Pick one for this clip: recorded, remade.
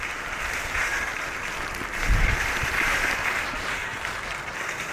recorded